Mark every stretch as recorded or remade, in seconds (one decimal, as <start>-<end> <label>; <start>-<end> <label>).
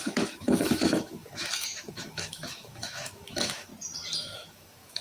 0.0-3.7 remade; 3.7-4.2 recorded; 4.2-5.0 remade